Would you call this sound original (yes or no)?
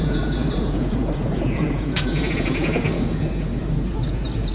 no